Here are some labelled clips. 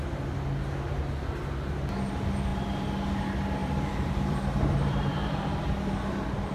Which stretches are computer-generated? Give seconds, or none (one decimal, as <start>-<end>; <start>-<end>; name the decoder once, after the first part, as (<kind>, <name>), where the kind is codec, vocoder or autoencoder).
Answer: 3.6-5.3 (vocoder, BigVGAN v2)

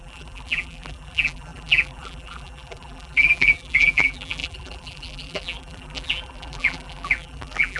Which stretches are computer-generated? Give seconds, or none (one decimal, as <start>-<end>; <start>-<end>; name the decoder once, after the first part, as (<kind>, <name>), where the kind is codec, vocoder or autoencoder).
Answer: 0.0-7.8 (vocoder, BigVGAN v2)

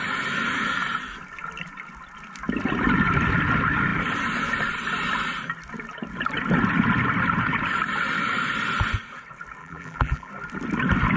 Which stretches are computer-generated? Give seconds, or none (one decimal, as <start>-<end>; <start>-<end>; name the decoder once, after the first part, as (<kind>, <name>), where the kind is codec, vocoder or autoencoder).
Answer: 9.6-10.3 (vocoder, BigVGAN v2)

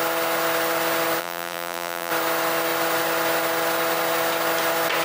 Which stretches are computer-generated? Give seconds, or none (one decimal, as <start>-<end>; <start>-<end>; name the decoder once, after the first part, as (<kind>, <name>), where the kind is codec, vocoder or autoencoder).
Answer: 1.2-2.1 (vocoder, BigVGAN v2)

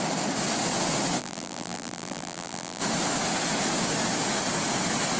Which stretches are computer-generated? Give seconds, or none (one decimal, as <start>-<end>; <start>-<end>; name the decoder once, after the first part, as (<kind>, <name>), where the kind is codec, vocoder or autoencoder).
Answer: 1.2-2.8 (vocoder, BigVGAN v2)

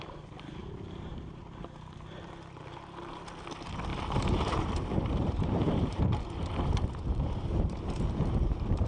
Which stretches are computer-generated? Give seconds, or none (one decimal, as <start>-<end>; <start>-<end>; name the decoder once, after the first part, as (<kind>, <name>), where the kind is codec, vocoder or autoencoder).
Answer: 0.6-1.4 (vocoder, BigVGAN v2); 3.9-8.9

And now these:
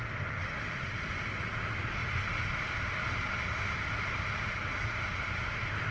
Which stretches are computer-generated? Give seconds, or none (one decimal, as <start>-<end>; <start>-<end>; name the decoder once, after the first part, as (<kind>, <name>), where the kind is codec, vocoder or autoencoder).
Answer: 0.4-1.3 (vocoder, BigVGAN v2)

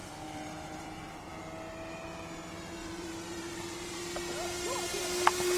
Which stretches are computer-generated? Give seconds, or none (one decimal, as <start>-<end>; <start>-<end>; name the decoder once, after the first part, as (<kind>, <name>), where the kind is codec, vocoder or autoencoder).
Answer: 0.0-1.3 (vocoder, BigVGAN v2); 2.8-4.0